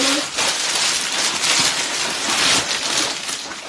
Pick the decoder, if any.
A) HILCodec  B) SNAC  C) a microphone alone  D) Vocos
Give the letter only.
C